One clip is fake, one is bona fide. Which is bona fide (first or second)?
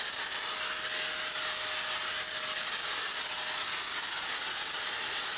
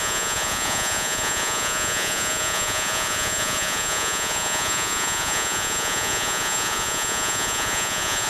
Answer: first